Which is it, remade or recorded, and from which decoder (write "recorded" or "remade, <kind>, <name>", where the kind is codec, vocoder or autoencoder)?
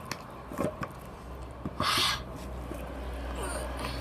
recorded